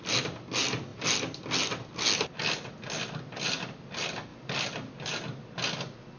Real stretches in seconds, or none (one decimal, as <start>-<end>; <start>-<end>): 0.0-6.2